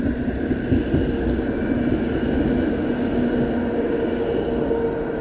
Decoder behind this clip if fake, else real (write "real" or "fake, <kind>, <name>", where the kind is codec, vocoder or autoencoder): real